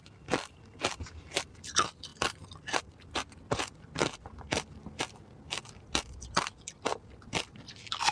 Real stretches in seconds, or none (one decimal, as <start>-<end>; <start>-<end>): 0.0-8.1

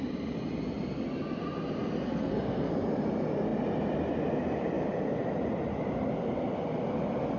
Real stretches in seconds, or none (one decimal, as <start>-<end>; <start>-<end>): 0.0-2.1; 2.7-7.4

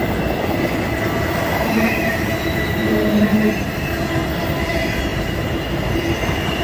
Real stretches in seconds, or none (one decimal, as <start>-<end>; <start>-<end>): 0.0-1.3; 3.9-6.6

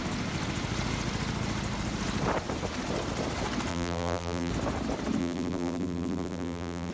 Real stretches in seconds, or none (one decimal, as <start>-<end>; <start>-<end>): 0.0-3.7; 4.5-5.2

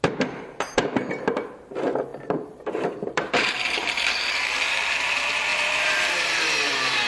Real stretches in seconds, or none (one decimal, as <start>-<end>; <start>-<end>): none

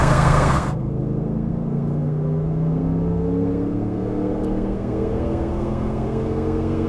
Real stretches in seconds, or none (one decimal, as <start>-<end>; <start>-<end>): none

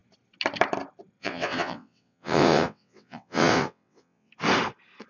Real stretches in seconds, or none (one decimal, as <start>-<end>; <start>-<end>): 0.0-1.2; 4.3-5.1